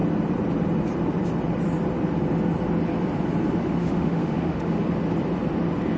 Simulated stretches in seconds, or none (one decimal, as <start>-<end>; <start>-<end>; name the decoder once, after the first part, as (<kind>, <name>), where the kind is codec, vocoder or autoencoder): 3.8-4.8 (autoencoder, DAC-VAE)